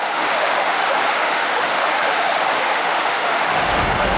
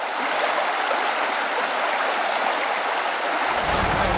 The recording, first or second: second